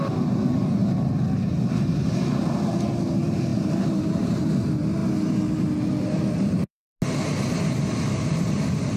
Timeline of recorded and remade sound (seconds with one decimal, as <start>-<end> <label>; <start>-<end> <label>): 0.0-3.5 recorded; 3.5-4.5 remade; 4.5-9.0 recorded